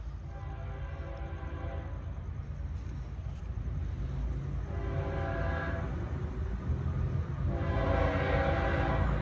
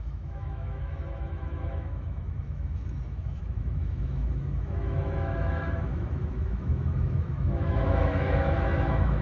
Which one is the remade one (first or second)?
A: second